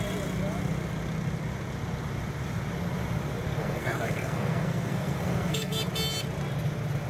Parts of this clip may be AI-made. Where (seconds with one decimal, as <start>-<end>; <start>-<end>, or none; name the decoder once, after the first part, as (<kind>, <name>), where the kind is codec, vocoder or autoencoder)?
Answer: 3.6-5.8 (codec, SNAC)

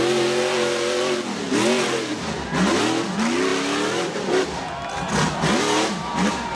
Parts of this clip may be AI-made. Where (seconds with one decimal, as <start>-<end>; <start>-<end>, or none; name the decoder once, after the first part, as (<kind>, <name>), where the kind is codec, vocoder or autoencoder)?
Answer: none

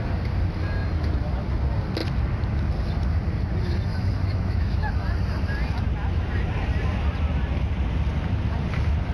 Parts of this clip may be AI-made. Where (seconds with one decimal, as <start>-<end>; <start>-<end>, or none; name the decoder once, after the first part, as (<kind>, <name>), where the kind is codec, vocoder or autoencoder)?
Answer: 3.9-4.9 (autoencoder, DAC-VAE)

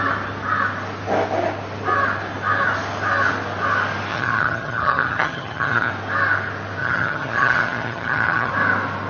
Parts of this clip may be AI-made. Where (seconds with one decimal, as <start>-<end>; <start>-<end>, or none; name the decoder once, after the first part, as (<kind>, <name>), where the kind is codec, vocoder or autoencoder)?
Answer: 4.1-5.9 (vocoder, HiFi-GAN); 6.8-8.5

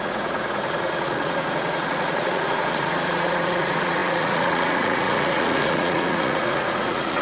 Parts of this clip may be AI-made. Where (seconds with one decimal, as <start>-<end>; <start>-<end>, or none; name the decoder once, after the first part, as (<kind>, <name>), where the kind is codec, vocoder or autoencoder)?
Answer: 0.0-7.2 (vocoder, Vocos)

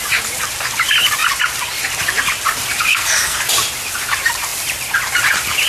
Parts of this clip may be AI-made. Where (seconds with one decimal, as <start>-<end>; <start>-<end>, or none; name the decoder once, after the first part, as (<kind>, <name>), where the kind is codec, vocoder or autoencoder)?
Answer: 2.9-3.4 (codec, SNAC)